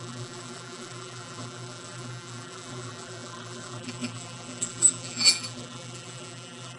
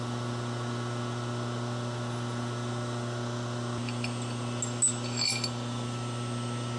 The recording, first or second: second